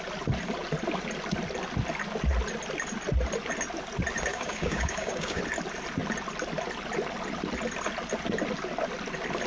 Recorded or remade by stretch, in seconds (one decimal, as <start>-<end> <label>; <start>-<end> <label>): 0.0-4.3 recorded; 4.3-5.4 remade; 5.4-9.5 recorded